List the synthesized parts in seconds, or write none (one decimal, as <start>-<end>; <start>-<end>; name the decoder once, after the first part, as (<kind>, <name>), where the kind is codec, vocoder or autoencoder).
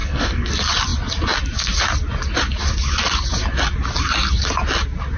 0.0-0.5 (codec, SNAC)